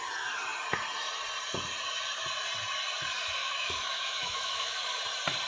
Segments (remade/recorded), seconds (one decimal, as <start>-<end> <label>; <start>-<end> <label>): 0.0-3.4 recorded; 3.4-5.0 remade; 5.0-5.5 recorded